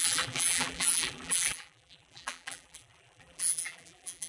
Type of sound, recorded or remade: remade